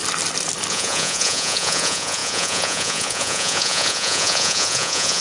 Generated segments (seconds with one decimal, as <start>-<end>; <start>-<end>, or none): 0.7-5.2